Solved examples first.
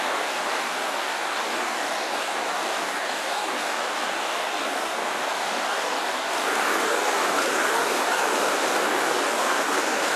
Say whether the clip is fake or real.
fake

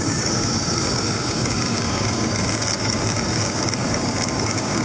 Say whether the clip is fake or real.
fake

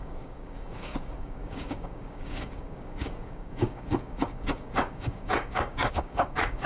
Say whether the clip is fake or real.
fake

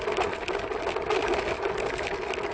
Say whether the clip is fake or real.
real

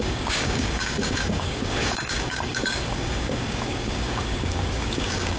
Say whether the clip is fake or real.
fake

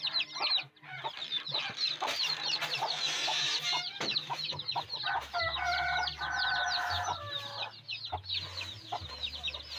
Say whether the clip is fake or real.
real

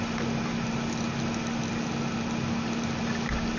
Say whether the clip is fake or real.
real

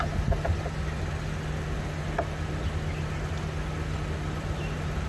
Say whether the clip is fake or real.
real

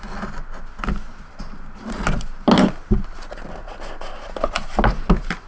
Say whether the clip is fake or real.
real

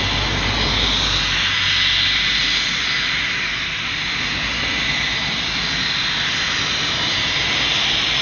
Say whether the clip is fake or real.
real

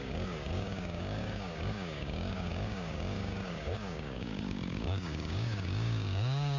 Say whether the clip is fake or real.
fake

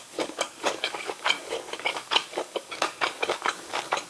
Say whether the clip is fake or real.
fake